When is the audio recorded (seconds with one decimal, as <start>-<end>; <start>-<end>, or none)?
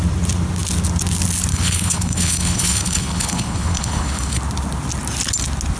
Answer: 0.0-1.5; 4.4-5.8